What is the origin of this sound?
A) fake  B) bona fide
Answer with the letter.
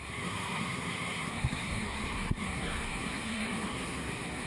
A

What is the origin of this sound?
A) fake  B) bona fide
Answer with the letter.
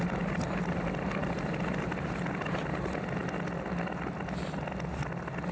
B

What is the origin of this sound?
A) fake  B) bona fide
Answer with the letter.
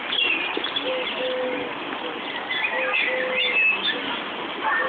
B